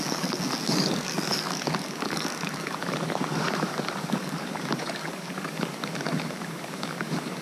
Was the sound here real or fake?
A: fake